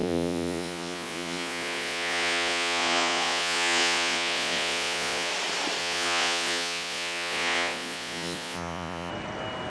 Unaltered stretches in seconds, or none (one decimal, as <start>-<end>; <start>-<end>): 5.3-5.8; 9.1-9.7

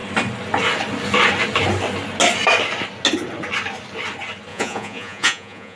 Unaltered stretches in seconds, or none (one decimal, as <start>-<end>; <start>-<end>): 0.0-4.5